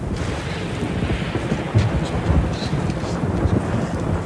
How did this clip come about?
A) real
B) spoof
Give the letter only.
A